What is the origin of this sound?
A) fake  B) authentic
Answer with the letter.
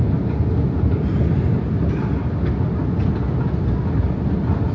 B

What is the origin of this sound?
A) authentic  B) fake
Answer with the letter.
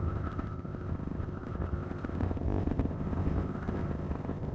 B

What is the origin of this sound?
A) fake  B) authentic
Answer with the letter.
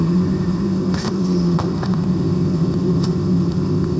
A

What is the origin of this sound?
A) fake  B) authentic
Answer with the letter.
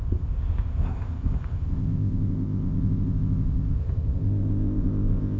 A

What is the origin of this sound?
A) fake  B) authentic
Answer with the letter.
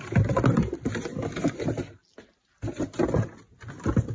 B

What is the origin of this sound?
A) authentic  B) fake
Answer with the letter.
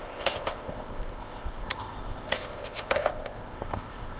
B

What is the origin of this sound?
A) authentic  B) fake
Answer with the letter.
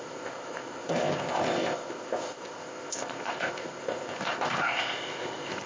B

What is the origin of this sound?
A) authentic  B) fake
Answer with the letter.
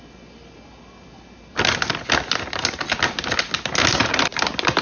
A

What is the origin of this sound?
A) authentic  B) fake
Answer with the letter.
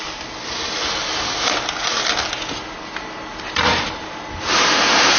A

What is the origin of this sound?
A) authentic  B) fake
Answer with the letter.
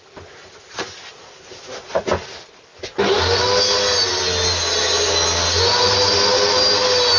A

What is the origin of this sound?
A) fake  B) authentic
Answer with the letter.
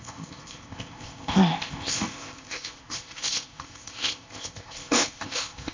A